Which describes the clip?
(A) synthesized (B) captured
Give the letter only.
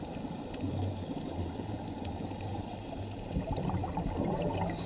B